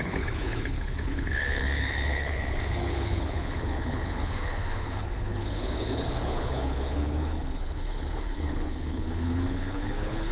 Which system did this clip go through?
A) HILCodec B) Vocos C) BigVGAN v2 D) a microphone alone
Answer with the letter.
A